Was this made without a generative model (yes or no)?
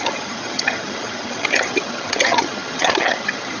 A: no